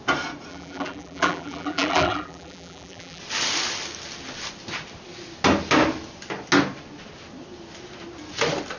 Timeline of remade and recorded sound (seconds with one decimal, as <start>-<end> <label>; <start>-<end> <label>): 0.0-0.5 recorded; 0.5-3.2 remade; 3.2-8.8 recorded